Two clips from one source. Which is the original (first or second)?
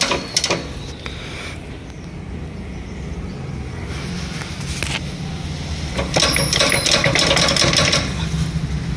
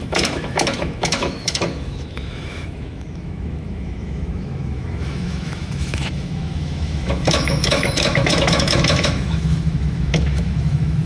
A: first